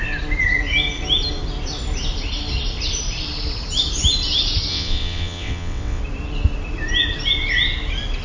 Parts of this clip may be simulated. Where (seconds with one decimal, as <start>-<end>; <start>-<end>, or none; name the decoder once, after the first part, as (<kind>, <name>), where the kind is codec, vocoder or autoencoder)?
4.7-6.0 (vocoder, WaveNeXt)